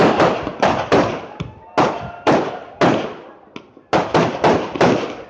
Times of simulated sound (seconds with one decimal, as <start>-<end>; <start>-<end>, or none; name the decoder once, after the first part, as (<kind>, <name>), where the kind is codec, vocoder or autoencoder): none

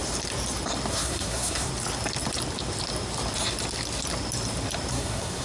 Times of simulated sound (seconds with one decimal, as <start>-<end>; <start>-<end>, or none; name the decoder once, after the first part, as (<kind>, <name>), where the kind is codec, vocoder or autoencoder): 0.9-1.7 (codec, SNAC); 4.9-5.4

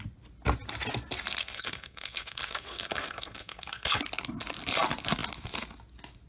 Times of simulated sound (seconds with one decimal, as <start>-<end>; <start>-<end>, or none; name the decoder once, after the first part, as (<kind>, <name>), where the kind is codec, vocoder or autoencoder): 1.4-4.0 (codec, SNAC)